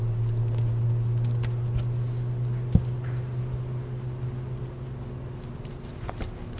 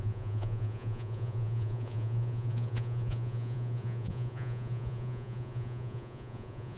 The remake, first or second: second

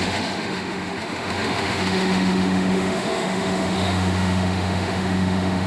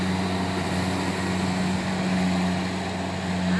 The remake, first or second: first